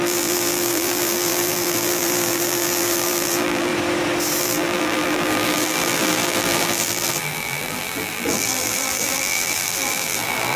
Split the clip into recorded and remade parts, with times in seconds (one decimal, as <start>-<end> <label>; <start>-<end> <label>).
0.0-3.7 remade; 3.7-4.4 recorded; 4.4-10.6 remade